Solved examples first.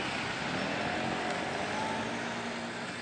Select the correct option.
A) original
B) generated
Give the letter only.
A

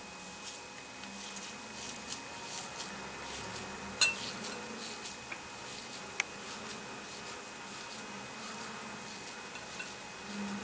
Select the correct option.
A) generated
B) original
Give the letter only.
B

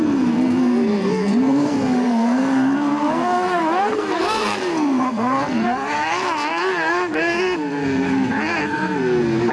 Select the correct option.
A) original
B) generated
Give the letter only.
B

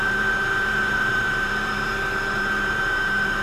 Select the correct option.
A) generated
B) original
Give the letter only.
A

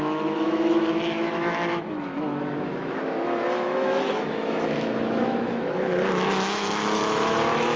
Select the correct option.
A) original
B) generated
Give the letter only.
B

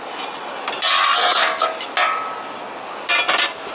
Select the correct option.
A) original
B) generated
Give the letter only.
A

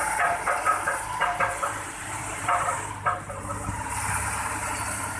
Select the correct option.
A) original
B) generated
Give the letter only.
B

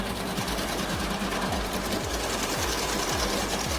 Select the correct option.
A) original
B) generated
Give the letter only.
B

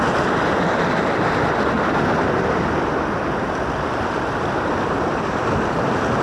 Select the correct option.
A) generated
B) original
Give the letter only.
B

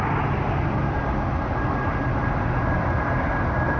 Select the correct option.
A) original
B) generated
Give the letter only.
A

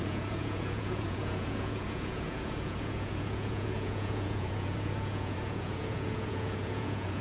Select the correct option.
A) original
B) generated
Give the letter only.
B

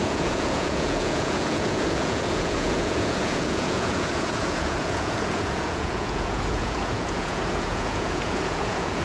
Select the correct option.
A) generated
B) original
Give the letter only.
A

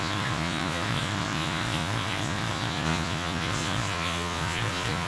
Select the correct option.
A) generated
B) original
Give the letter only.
A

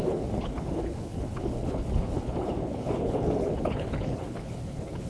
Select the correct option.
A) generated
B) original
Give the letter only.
A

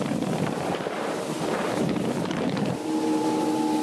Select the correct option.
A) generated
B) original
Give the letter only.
A